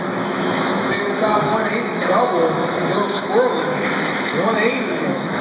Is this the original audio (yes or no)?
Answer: no